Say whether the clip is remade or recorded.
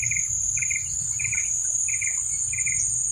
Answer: remade